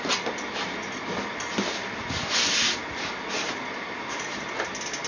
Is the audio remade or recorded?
recorded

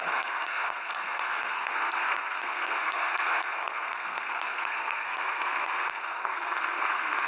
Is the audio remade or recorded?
remade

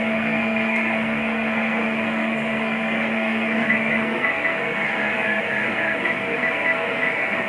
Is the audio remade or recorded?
remade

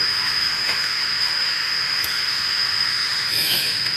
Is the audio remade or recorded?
remade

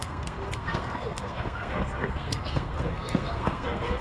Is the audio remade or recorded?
remade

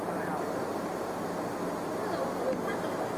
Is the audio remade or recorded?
recorded